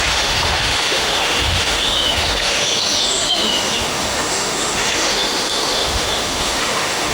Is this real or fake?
fake